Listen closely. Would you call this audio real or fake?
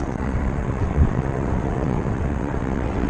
fake